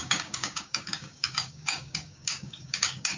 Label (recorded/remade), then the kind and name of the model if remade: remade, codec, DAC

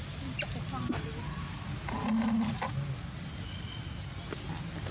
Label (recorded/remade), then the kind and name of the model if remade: recorded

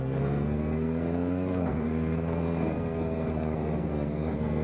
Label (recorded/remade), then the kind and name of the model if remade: remade, codec, SNAC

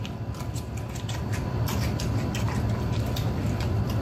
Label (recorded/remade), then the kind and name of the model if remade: remade, vocoder, BigVGAN v2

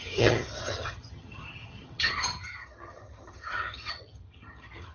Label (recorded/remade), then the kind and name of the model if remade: remade, vocoder, HiFi-GAN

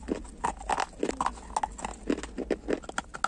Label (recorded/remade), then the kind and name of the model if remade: recorded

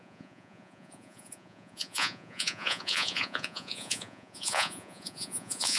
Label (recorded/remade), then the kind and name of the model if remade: remade, vocoder, Vocos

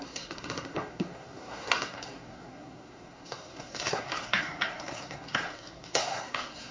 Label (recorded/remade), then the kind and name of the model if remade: remade, codec, SNAC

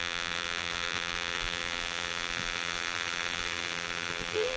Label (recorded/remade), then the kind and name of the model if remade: remade, vocoder, BigVGAN v2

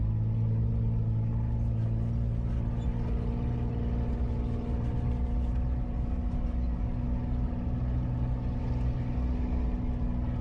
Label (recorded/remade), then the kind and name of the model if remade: recorded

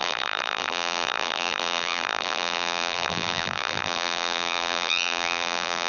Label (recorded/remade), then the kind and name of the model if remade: remade, vocoder, BigVGAN v2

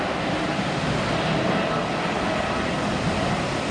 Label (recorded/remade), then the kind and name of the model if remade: recorded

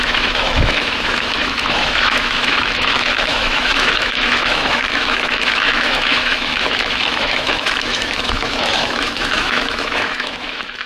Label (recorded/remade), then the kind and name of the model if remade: remade, autoencoder, DAC-VAE